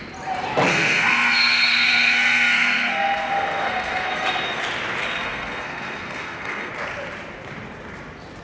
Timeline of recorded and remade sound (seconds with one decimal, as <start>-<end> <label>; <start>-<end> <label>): 0.0-0.7 recorded; 0.7-4.6 remade; 4.6-5.0 recorded; 5.0-6.7 remade; 6.7-8.4 recorded